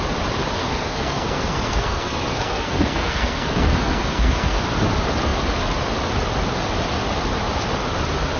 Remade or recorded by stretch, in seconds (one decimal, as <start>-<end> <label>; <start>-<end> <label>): 0.0-0.6 recorded; 0.6-4.6 remade; 4.6-8.4 recorded